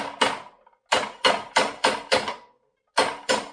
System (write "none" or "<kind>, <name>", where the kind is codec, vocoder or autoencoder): none